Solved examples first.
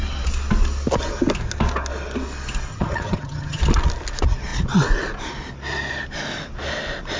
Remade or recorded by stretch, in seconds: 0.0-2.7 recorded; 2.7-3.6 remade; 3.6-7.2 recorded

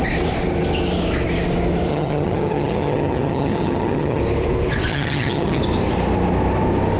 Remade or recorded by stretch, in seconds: 0.0-1.9 recorded; 1.9-4.2 remade; 4.2-4.9 recorded; 4.9-5.6 remade; 5.6-7.0 recorded

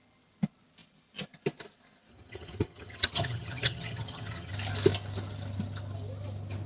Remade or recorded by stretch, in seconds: 0.0-2.1 recorded; 2.1-4.5 remade; 4.5-6.7 recorded

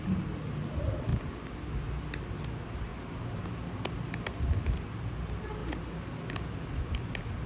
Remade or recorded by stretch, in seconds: 0.0-7.5 recorded

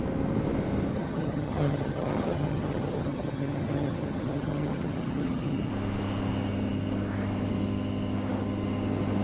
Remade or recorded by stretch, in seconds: 0.0-0.9 recorded; 0.9-5.7 remade; 5.7-9.2 recorded